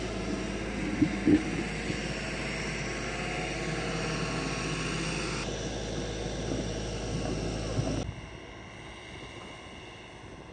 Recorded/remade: recorded